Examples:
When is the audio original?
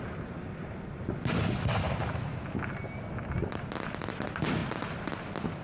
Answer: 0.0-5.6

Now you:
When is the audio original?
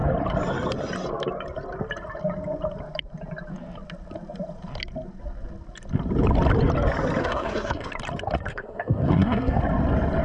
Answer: 0.0-7.2; 7.9-8.5; 9.6-10.2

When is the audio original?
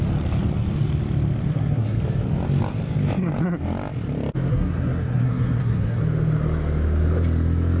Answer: 0.0-1.5; 2.0-4.5; 6.0-7.8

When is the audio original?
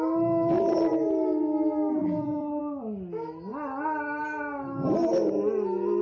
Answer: 0.0-2.0; 2.6-6.0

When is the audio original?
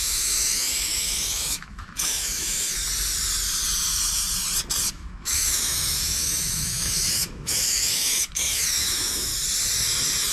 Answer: 2.8-4.9; 9.3-10.3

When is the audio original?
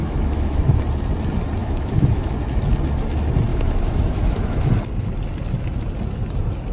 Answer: 0.8-1.6; 2.3-3.5; 4.7-6.7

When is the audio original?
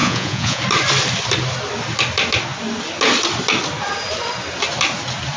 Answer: 0.6-5.4